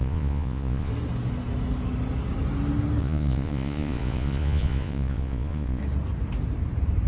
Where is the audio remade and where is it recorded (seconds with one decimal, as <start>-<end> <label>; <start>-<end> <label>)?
0.0-0.9 remade; 0.9-3.0 recorded; 3.0-5.8 remade; 5.8-7.1 recorded